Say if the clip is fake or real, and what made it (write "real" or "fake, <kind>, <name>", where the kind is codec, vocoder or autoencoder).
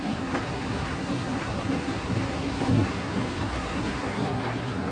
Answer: fake, codec, SNAC